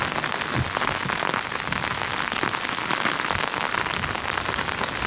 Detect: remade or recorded recorded